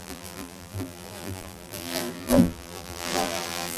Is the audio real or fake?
fake